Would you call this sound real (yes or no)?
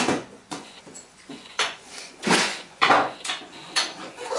no